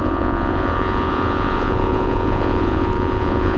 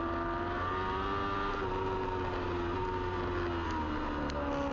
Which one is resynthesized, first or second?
first